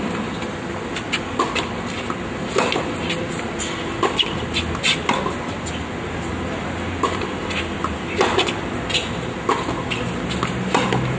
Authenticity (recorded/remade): recorded